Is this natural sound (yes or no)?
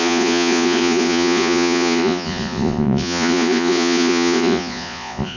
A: no